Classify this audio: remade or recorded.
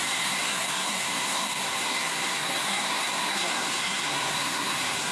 remade